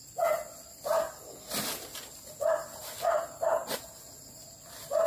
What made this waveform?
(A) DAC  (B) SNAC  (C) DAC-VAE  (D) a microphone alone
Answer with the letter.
D